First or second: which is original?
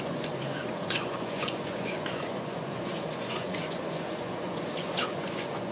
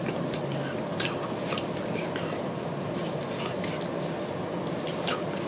second